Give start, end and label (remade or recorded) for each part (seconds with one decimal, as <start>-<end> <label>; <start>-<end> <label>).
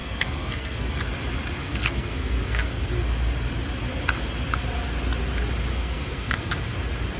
0.0-1.0 remade; 1.0-1.6 recorded; 1.6-2.9 remade; 2.9-5.7 recorded; 5.7-6.6 remade; 6.6-7.2 recorded